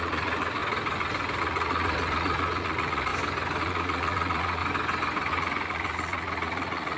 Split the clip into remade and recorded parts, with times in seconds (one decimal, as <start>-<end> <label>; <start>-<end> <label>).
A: 0.0-0.6 remade; 0.6-1.4 recorded; 1.4-3.1 remade; 3.1-3.6 recorded; 3.6-4.6 remade; 4.6-5.3 recorded; 5.3-7.0 remade